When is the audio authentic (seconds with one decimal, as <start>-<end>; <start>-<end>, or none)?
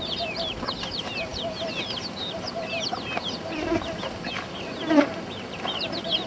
0.0-6.3